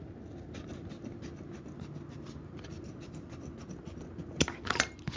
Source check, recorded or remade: recorded